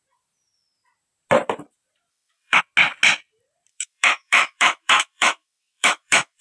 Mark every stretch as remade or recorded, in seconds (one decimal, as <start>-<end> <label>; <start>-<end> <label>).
0.0-2.1 recorded; 2.1-2.6 remade; 2.6-3.7 recorded; 3.7-6.4 remade